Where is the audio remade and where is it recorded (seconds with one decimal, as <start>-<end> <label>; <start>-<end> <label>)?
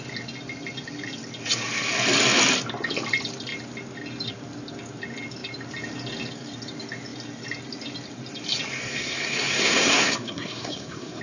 0.0-8.8 recorded; 8.8-11.2 remade